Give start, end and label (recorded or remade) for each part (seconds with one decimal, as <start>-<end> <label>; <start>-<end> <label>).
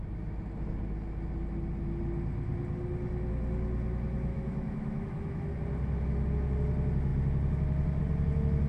0.0-4.3 recorded; 4.3-5.5 remade; 5.5-8.7 recorded